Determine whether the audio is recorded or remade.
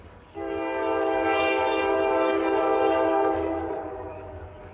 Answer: remade